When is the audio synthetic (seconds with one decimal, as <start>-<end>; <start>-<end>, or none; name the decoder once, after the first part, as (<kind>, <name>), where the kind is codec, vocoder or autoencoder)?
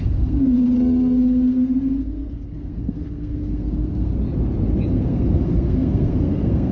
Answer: 0.0-4.1 (codec, SNAC); 4.9-6.7